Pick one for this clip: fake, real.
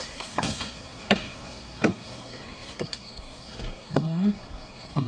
fake